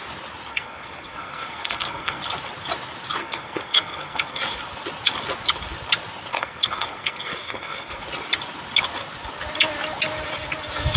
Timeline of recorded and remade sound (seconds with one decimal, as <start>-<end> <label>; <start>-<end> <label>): 0.0-0.5 recorded; 0.5-2.2 remade; 2.2-3.2 recorded; 3.2-4.4 remade; 4.4-6.3 recorded; 6.3-8.0 remade; 8.0-11.0 recorded

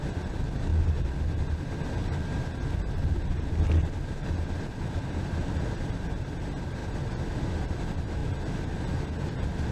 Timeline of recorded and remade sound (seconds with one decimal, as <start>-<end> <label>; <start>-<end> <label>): 0.0-9.7 recorded

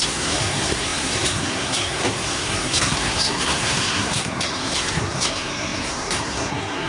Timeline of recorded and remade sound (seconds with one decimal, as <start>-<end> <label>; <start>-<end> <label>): 0.0-6.9 remade

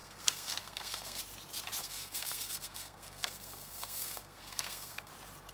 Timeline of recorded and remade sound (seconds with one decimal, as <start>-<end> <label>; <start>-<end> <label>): 0.0-1.2 remade; 1.2-1.8 recorded; 1.8-5.1 remade; 5.1-5.5 recorded

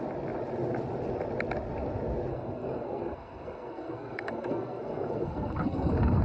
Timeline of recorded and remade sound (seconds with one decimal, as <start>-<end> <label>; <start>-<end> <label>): 0.0-2.3 recorded; 2.3-6.2 remade

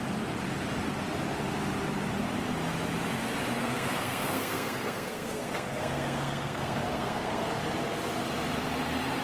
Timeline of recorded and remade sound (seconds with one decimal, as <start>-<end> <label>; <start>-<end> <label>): 0.0-3.6 recorded; 3.6-7.5 remade; 7.5-9.2 recorded

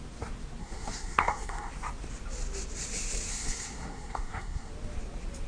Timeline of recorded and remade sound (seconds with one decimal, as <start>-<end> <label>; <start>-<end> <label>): 0.0-0.6 recorded; 0.6-1.7 remade; 1.7-3.3 recorded; 3.3-4.7 remade; 4.7-5.5 recorded

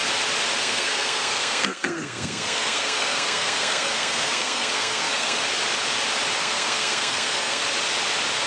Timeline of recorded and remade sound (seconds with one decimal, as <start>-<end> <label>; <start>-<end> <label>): 0.0-0.6 recorded; 0.6-5.4 remade; 5.4-6.4 recorded; 6.4-7.6 remade; 7.6-8.5 recorded